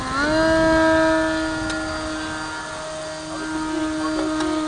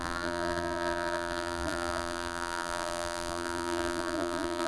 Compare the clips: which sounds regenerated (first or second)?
second